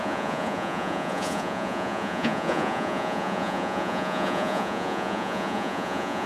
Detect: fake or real fake